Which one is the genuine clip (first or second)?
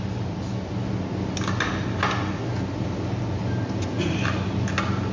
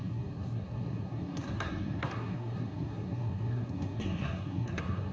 first